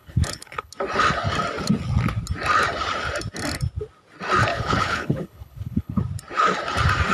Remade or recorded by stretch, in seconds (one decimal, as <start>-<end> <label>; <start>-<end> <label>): 0.0-0.7 remade; 0.7-4.5 recorded; 4.5-6.0 remade; 6.0-7.1 recorded